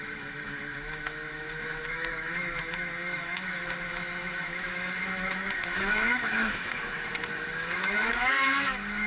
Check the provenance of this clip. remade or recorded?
remade